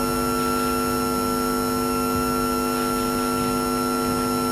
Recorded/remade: recorded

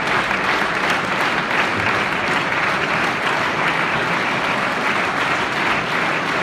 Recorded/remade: recorded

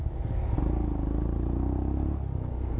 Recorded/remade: recorded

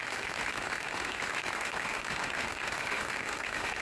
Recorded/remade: remade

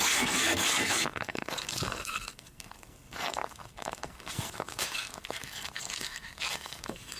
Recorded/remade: remade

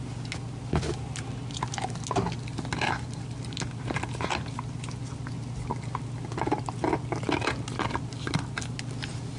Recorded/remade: recorded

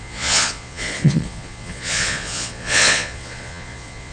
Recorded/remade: remade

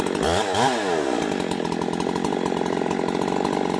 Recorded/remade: recorded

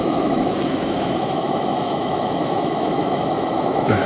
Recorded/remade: remade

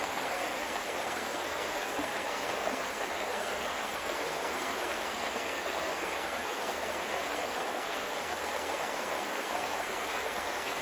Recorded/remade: remade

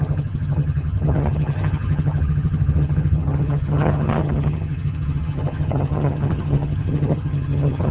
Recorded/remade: remade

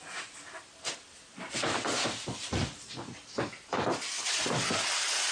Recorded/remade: recorded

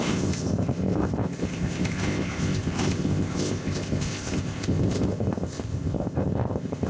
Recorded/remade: remade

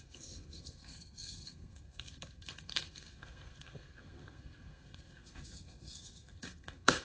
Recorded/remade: remade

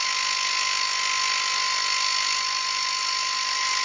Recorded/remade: recorded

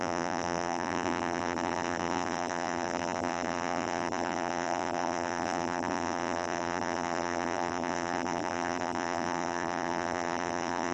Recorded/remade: remade